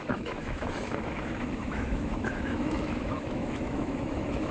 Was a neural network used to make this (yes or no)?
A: yes